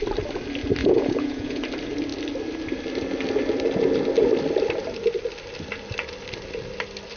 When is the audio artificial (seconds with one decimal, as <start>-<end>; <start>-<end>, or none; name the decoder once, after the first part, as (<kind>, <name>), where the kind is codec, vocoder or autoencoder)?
0.8-1.6 (vocoder, Vocos)